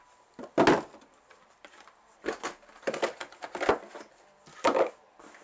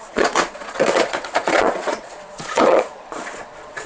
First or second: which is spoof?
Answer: second